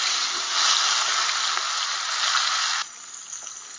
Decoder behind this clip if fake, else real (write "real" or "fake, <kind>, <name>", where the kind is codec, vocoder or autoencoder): real